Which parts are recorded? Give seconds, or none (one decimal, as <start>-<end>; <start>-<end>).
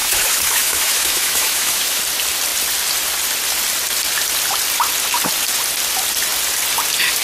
2.0-7.2